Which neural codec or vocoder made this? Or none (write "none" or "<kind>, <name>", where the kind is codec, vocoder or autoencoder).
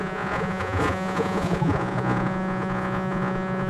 vocoder, Vocos